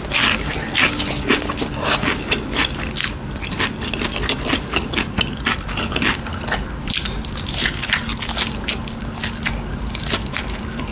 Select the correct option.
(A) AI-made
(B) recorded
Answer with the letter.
B